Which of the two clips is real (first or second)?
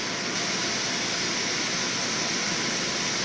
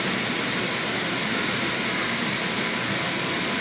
first